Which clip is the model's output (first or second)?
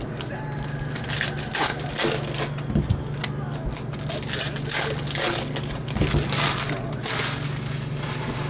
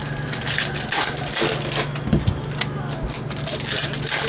second